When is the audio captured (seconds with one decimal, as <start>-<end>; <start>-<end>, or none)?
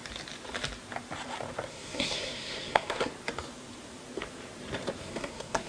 0.0-1.7; 3.1-5.0